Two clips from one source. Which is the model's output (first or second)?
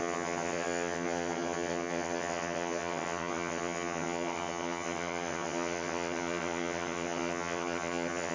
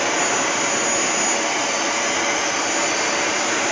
first